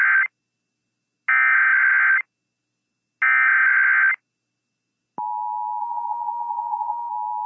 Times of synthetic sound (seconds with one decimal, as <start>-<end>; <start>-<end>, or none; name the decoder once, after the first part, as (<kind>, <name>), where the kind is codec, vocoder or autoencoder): 5.8-7.1 (vocoder, WaveNeXt)